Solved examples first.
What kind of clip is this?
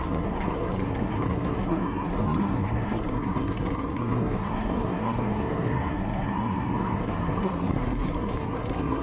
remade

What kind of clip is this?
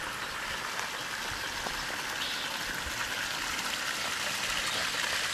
recorded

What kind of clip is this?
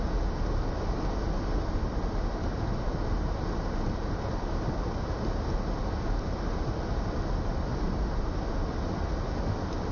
recorded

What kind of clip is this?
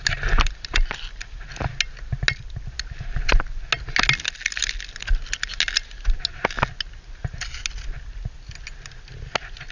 recorded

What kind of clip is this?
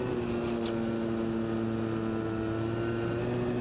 recorded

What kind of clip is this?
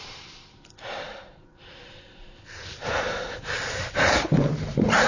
remade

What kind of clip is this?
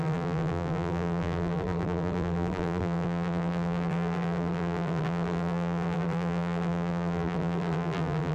remade